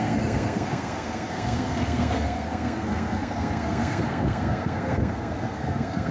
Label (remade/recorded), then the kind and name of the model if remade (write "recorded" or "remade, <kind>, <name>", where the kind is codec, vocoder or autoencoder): remade, codec, SNAC